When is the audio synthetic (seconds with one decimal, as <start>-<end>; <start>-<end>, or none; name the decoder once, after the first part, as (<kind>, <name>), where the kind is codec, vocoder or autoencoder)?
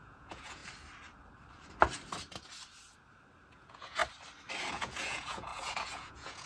0.0-0.6 (vocoder, Vocos); 3.5-4.0; 4.7-6.5